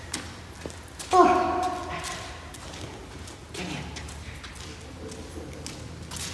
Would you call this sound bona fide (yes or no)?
yes